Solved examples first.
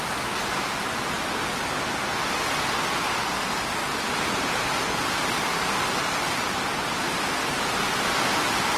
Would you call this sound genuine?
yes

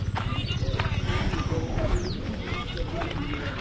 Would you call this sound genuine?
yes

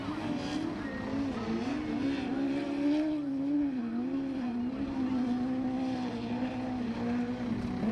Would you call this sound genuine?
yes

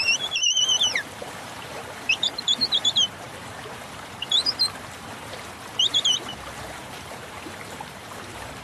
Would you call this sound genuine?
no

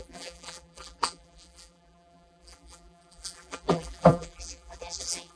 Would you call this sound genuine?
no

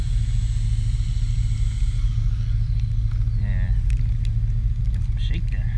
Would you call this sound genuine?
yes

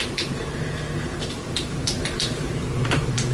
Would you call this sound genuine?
no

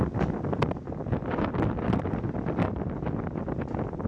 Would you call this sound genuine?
yes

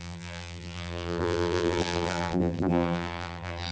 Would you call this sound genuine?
no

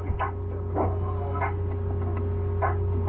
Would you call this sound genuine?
yes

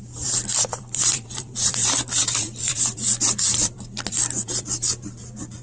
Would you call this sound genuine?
no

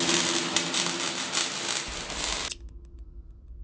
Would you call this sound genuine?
yes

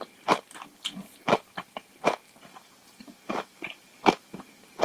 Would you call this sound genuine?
yes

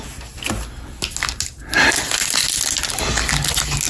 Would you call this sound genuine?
yes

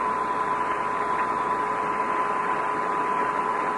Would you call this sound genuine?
no